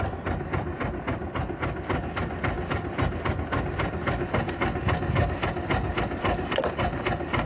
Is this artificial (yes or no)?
no